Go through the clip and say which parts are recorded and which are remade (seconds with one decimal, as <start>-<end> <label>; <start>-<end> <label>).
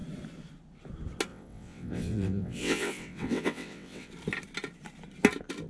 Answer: 0.0-1.3 recorded; 1.3-4.1 remade; 4.1-5.7 recorded